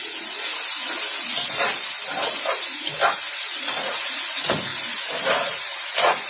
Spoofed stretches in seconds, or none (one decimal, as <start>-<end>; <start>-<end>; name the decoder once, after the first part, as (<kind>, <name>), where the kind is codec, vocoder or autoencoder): 0.0-0.5 (vocoder, Vocos); 3.3-4.7; 5.3-6.3